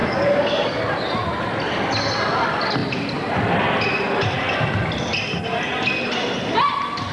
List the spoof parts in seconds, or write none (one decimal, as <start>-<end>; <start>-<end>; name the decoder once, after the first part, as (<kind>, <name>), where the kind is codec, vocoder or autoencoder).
0.0-0.8 (codec, DAC)